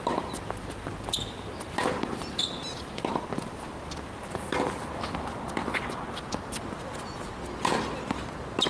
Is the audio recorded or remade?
recorded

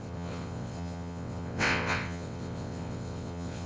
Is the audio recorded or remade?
remade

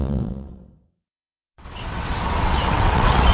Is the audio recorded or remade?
remade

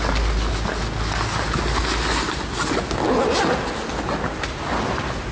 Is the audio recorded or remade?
recorded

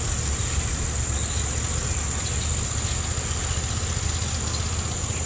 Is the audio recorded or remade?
recorded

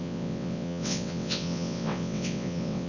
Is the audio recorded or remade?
remade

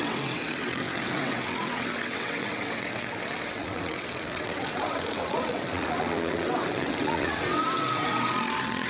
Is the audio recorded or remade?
remade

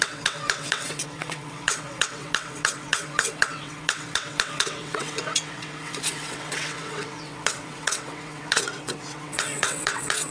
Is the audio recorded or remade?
remade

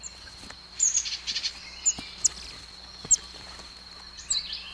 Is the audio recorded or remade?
recorded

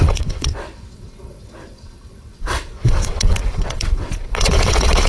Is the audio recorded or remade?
remade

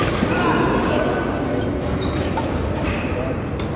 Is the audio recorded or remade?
recorded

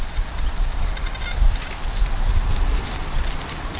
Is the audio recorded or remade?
recorded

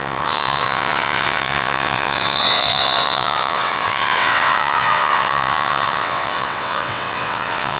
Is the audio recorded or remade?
remade